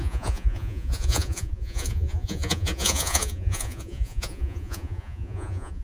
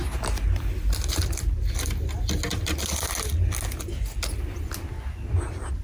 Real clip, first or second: second